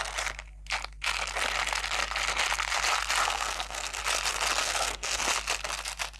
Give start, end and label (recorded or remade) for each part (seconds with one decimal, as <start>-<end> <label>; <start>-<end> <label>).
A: 0.0-3.2 recorded; 3.2-4.0 remade; 4.0-4.6 recorded; 4.6-5.2 remade; 5.2-6.2 recorded